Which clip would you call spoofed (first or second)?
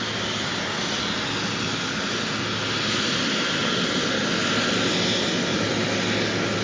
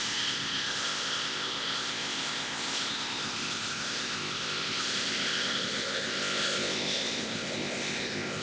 second